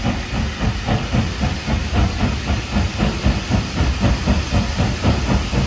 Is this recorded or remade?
recorded